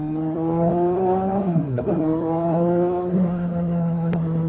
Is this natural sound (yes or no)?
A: no